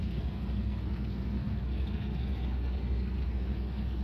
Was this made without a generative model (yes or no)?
no